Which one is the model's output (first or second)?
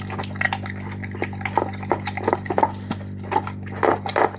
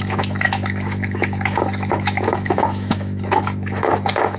second